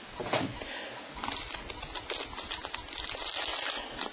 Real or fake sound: real